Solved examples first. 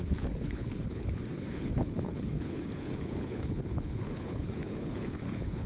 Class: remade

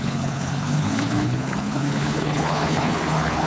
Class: remade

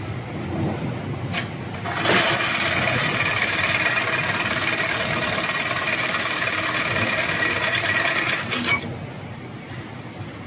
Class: recorded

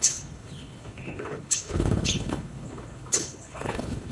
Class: remade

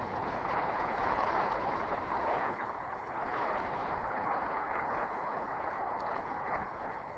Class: remade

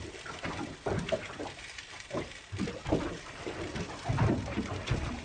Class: recorded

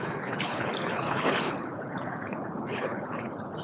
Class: remade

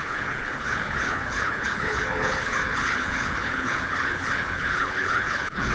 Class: remade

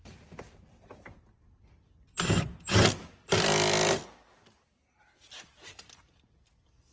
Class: recorded